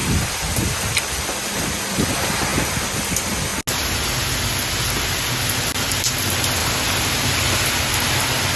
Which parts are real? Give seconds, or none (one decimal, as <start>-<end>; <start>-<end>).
0.6-8.6